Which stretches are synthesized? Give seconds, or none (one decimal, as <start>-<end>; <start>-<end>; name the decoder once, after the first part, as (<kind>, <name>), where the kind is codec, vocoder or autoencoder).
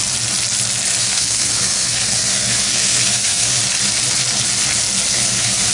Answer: 1.0-3.6 (codec, SNAC); 5.1-5.7